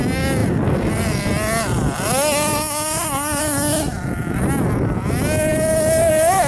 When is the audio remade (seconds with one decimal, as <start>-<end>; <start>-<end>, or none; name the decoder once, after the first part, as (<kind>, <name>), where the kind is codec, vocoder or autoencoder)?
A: none